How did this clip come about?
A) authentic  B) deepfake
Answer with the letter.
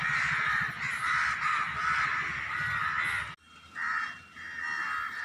A